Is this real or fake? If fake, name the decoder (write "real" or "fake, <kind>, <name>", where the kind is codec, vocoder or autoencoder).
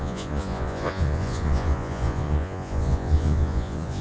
fake, vocoder, Vocos